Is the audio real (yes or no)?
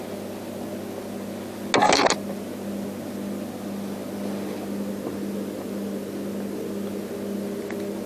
yes